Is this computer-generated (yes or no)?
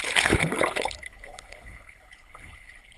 yes